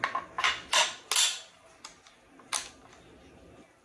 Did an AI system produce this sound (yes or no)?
no